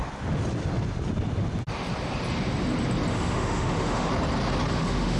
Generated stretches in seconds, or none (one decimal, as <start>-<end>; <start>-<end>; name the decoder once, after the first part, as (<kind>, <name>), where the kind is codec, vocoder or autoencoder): 3.1-4.1 (autoencoder, DAC-VAE); 4.7-5.2